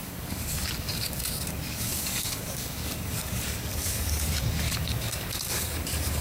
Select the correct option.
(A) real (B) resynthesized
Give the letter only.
B